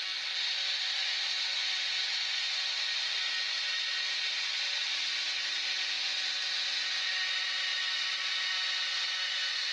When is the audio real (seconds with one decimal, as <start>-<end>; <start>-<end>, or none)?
0.0-9.7